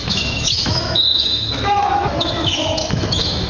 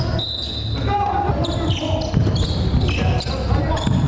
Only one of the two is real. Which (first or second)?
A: second